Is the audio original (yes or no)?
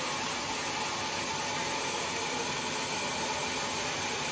yes